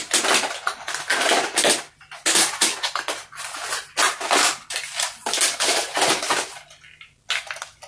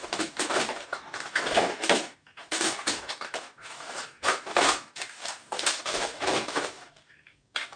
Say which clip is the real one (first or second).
first